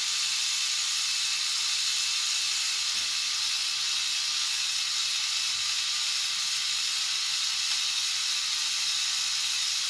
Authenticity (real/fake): real